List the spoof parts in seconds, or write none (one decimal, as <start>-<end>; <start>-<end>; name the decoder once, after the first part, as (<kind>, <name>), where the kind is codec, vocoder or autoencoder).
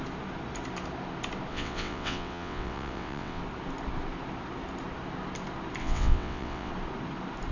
1.5-3.4 (vocoder, WaveNeXt); 5.8-6.7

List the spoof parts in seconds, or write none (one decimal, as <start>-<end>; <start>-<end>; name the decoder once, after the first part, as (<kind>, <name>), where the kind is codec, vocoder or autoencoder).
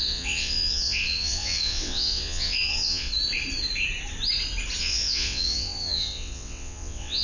0.0-3.1 (vocoder, WaveNeXt); 4.8-7.2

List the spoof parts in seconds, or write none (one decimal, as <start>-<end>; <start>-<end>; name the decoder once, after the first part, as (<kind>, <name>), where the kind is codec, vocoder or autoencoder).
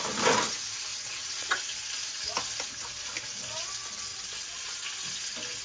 0.9-1.6 (vocoder, WaveNeXt); 4.1-4.7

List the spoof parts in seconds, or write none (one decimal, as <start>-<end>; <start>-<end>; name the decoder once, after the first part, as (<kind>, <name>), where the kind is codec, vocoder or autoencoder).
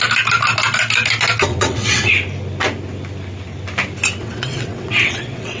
1.5-2.1 (vocoder, WaveNeXt); 4.2-5.6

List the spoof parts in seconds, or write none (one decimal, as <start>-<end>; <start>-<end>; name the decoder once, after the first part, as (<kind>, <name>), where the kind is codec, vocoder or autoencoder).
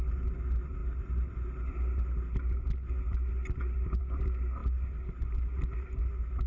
none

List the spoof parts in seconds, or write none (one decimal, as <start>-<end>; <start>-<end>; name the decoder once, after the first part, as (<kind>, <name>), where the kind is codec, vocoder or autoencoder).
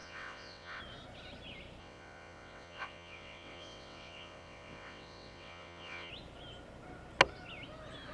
0.0-0.8 (vocoder, WaveNeXt); 1.8-6.1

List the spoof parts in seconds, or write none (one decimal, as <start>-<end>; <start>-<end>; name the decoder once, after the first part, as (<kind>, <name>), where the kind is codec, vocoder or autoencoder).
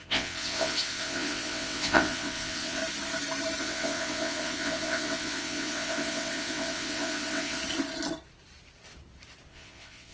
0.0-2.8 (vocoder, WaveNeXt); 3.6-7.6; 9.5-10.1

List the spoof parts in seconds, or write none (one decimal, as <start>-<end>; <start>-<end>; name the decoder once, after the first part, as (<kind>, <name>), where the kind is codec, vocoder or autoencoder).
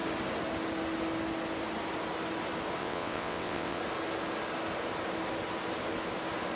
2.8-3.8 (vocoder, WaveNeXt)